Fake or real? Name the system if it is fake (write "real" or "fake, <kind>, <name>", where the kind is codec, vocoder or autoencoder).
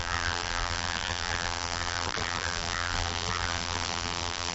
fake, vocoder, BigVGAN v2